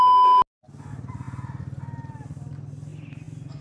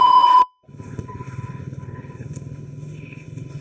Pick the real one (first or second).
first